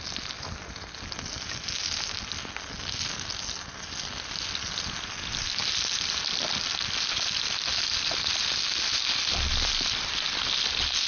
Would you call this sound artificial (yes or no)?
no